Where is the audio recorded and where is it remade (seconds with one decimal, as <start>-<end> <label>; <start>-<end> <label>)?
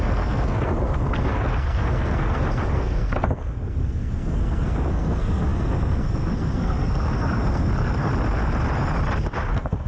0.0-8.1 remade; 8.1-9.5 recorded; 9.5-9.9 remade